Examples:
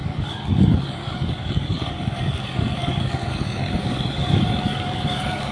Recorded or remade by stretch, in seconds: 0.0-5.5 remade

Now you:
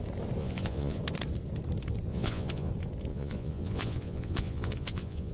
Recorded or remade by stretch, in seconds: 0.0-0.4 recorded; 0.4-1.0 remade; 1.0-2.1 recorded; 2.1-2.7 remade; 2.7-3.1 recorded; 3.1-5.3 remade